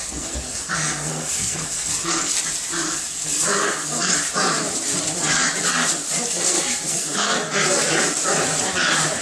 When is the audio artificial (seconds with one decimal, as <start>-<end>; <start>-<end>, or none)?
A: 0.0-2.3; 2.9-4.1; 6.3-8.2